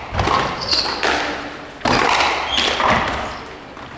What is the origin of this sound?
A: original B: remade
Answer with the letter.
A